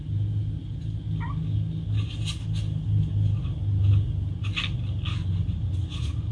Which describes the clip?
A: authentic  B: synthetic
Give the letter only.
A